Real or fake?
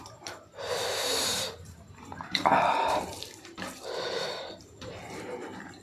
fake